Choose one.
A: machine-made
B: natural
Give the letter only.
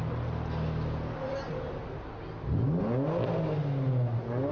B